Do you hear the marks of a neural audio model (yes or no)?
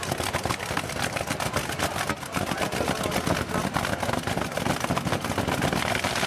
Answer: no